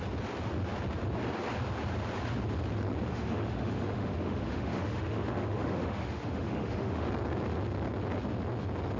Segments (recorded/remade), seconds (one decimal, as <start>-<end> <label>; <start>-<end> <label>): 0.0-3.1 recorded; 3.1-7.1 remade; 7.1-9.0 recorded

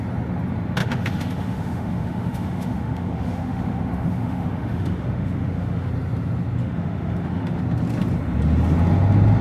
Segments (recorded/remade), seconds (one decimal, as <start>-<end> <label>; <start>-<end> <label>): 0.0-0.8 recorded; 0.8-5.9 remade; 5.9-6.6 recorded; 6.6-7.6 remade; 7.6-9.4 recorded

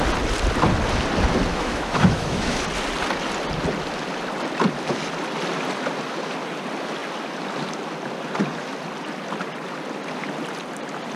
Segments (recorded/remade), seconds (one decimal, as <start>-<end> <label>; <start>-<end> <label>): 0.0-1.5 recorded; 1.5-2.6 remade; 2.6-11.2 recorded

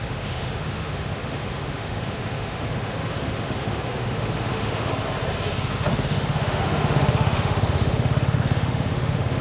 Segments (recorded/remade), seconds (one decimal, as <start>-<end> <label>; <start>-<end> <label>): 0.0-4.9 remade; 4.9-5.7 recorded; 5.7-9.4 remade

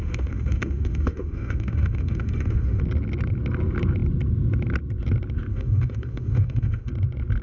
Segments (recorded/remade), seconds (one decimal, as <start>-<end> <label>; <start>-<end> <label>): 0.0-2.8 remade; 2.8-5.5 recorded; 5.5-6.9 remade; 6.9-7.4 recorded

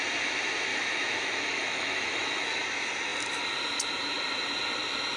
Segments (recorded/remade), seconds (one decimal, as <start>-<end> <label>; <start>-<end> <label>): 0.0-0.7 recorded; 0.7-2.4 remade; 2.4-5.2 recorded

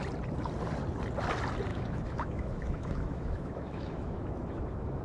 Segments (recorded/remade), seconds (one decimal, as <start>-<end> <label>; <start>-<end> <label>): 0.0-1.7 recorded; 1.7-5.0 remade